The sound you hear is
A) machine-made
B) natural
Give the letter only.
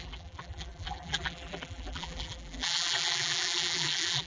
A